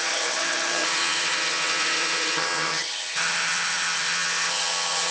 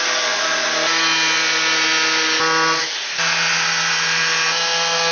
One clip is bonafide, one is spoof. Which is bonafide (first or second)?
second